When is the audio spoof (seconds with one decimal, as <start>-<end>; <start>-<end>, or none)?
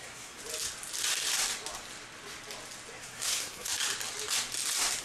0.0-0.4; 3.0-3.7